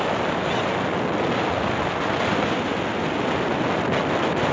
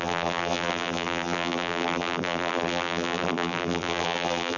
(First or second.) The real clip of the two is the first